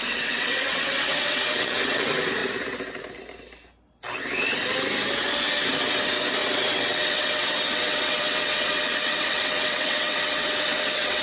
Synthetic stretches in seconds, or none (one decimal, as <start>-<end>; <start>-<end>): 0.0-2.0; 6.4-11.2

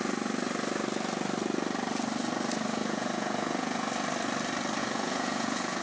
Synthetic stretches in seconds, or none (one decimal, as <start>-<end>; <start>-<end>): 2.8-3.9; 4.8-5.8

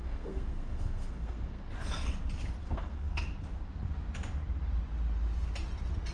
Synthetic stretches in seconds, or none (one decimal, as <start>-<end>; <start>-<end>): 0.0-1.6; 2.6-3.2